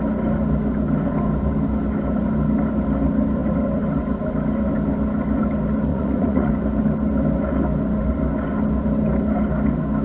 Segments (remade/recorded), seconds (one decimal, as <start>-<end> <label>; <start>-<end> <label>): 0.0-5.9 recorded; 5.9-6.5 remade; 6.5-10.0 recorded